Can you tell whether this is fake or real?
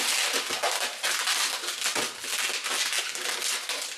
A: real